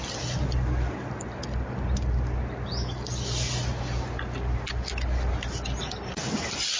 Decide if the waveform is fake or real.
real